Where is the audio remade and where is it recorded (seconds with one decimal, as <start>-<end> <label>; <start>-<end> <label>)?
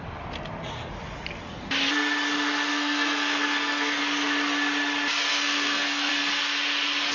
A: 0.0-2.7 recorded; 2.7-4.0 remade; 4.0-5.3 recorded; 5.3-6.1 remade; 6.1-7.1 recorded